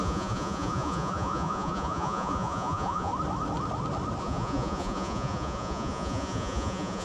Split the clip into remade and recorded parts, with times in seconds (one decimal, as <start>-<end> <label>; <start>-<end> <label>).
0.0-3.1 remade; 3.1-4.2 recorded; 4.2-7.0 remade